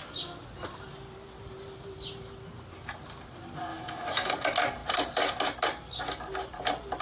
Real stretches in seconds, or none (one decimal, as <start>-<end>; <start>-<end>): 0.0-3.7; 4.3-7.0